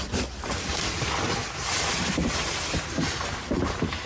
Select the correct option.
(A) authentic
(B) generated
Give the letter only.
A